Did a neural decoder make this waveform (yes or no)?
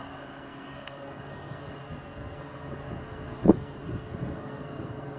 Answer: yes